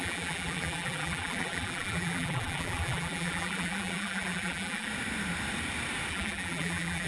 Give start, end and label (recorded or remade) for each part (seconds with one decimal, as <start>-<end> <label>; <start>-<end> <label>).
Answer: 0.0-4.9 remade; 4.9-6.1 recorded; 6.1-7.1 remade